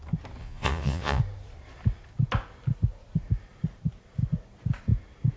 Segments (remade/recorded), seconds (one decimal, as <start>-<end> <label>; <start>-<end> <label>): 0.0-0.4 recorded; 0.4-1.2 remade; 1.2-5.4 recorded